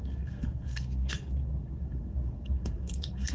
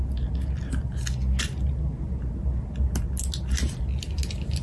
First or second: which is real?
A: second